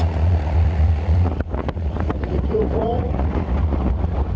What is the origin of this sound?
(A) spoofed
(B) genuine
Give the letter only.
A